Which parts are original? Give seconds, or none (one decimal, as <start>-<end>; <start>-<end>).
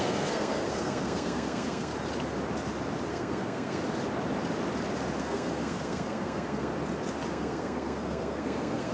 1.9-3.1; 3.8-5.2; 6.7-7.3